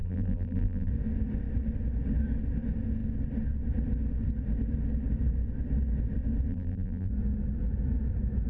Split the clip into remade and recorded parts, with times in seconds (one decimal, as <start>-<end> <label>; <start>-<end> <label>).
0.0-0.9 remade; 0.9-6.5 recorded; 6.5-7.1 remade; 7.1-8.5 recorded